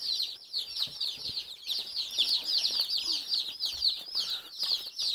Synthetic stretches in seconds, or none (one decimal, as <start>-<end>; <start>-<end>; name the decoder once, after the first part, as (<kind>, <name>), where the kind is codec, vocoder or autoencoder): 1.1-3.0 (vocoder, Vocos)